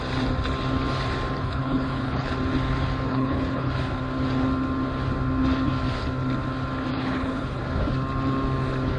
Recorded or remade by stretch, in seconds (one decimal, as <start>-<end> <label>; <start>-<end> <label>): 0.0-1.4 recorded; 1.4-2.3 remade; 2.3-3.1 recorded; 3.1-3.7 remade; 3.7-6.9 recorded; 6.9-7.6 remade; 7.6-9.0 recorded